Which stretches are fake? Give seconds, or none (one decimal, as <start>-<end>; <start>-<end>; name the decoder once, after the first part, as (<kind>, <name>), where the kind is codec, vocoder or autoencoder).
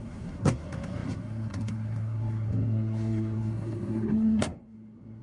0.0-5.2 (codec, SNAC)